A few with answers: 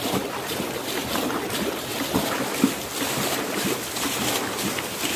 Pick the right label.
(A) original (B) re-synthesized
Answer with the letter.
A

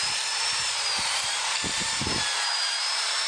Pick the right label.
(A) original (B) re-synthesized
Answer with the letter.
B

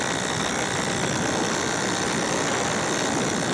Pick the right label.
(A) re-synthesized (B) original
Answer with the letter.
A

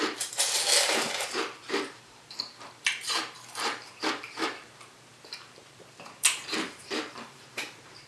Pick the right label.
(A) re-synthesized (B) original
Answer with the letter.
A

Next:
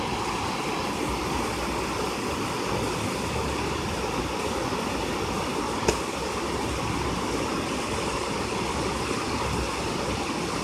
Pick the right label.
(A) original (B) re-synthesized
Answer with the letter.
A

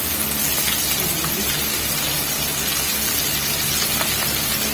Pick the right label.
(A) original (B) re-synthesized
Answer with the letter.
A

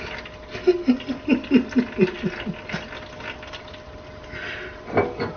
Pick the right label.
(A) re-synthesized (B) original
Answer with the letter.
B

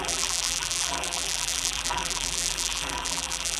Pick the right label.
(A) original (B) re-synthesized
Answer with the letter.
B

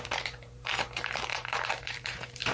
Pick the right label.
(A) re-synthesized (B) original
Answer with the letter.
A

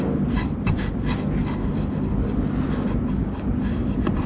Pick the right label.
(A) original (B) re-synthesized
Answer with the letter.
A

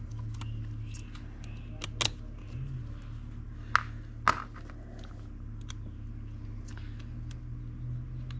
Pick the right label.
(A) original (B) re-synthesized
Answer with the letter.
A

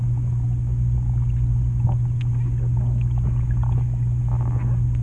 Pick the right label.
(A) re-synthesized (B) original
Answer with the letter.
B